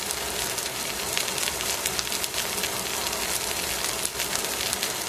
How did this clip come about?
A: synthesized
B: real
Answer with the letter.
B